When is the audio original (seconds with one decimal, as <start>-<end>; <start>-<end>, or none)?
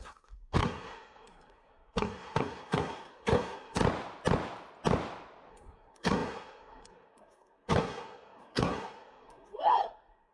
3.8-5.5